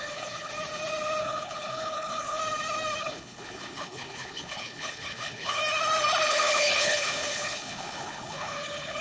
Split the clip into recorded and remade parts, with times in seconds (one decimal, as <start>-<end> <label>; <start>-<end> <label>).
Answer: 0.0-0.5 remade; 0.5-1.2 recorded; 1.2-2.4 remade; 2.4-3.0 recorded; 3.0-5.6 remade; 5.6-6.3 recorded; 6.3-9.0 remade